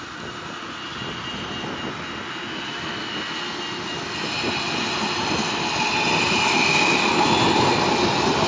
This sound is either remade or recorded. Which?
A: recorded